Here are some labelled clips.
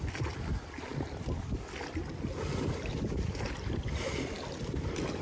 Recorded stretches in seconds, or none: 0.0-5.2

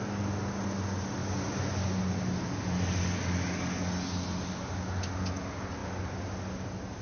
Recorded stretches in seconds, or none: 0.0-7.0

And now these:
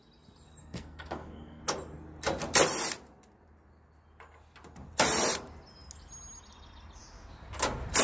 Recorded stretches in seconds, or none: 0.0-0.6; 1.6-8.0